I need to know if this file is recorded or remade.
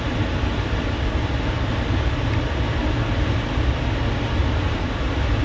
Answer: recorded